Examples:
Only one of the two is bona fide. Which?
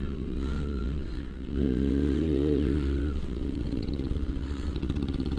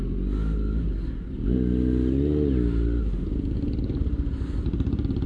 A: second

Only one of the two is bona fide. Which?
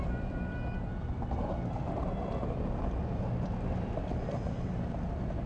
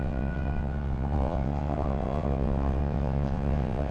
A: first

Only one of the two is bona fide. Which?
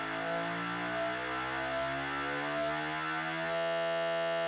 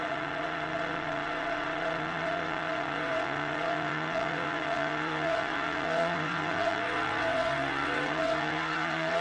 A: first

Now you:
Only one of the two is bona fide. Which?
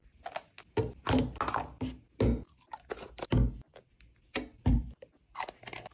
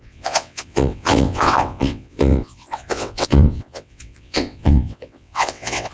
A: first